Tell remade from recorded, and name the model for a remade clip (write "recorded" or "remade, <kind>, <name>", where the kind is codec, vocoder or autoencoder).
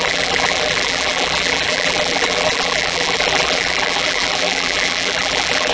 remade, vocoder, BigVGAN v2